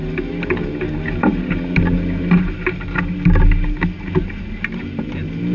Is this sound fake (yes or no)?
no